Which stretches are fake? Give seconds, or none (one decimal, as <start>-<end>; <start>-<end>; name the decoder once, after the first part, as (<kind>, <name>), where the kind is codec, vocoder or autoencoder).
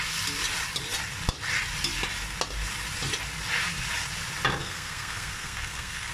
4.6-6.1 (codec, SNAC)